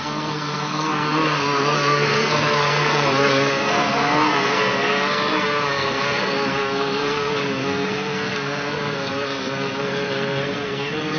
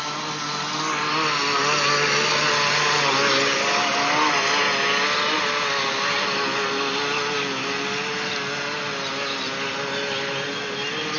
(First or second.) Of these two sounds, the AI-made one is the first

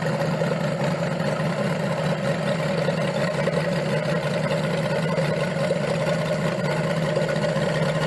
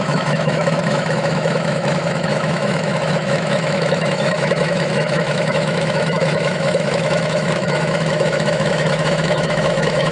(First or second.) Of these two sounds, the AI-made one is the second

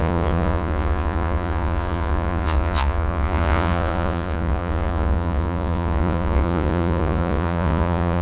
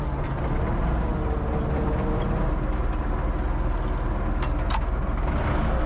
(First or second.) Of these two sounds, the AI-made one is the first